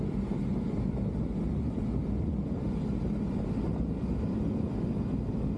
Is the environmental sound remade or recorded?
recorded